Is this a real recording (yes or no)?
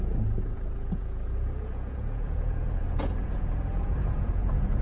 no